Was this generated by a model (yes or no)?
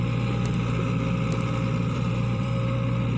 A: yes